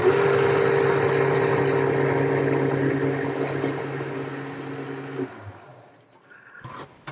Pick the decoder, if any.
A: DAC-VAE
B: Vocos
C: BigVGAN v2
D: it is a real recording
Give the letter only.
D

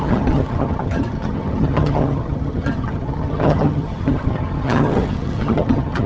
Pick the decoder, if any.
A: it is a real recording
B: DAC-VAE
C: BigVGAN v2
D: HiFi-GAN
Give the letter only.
D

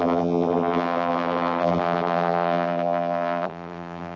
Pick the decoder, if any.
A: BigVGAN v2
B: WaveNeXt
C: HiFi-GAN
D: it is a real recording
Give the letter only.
A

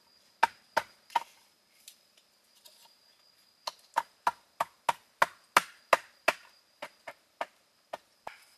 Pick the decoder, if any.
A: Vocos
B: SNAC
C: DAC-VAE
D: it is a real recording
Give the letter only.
D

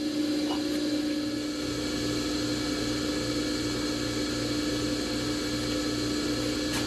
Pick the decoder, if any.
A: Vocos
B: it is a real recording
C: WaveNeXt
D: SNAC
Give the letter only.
B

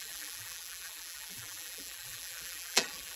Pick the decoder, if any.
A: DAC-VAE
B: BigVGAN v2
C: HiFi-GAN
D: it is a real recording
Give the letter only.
B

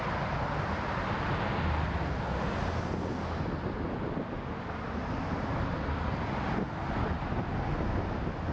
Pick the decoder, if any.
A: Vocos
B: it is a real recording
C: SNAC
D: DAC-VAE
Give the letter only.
B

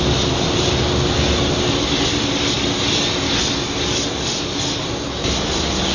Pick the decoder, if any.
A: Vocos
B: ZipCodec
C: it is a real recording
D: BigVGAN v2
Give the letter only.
C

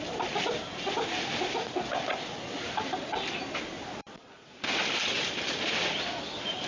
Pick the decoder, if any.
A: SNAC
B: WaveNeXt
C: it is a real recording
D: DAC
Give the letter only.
C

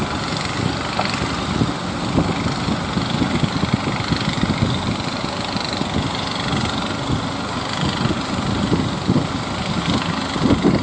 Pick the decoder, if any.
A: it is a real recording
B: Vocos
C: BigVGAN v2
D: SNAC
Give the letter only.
A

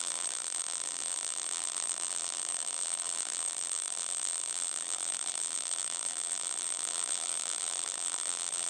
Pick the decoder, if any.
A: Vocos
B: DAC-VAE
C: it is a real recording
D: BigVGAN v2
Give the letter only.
D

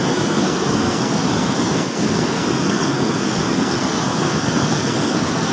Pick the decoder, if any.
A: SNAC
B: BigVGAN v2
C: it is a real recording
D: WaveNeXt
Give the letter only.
A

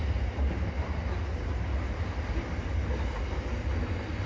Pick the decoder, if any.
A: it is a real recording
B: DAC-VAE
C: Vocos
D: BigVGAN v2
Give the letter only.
A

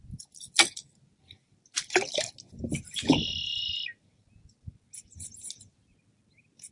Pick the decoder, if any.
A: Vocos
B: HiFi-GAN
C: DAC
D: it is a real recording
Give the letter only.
D